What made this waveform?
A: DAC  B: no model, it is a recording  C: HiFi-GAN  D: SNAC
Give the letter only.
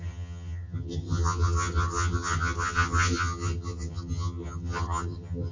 C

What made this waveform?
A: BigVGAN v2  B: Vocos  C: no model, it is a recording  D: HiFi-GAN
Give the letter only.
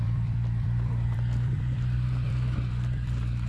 A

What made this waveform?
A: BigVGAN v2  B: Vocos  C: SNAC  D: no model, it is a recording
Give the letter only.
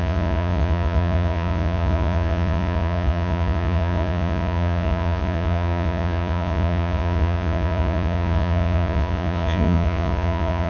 B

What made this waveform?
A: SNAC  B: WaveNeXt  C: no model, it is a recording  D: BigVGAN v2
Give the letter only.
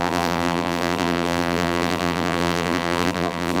D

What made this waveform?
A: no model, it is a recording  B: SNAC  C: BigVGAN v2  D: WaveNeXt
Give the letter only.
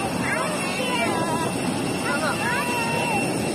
A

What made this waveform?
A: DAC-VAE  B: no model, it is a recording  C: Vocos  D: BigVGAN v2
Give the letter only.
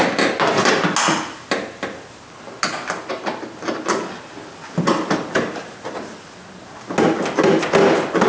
B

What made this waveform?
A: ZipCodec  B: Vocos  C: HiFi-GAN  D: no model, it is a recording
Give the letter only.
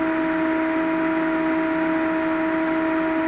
D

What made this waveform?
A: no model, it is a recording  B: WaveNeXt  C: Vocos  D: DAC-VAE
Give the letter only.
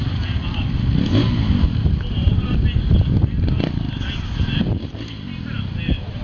A